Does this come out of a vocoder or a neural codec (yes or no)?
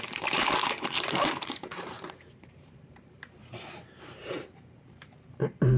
yes